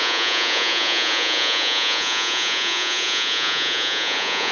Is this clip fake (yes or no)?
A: yes